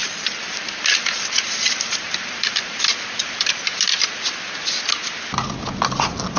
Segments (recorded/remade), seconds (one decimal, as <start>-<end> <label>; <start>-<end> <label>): 0.0-3.8 remade; 3.8-6.4 recorded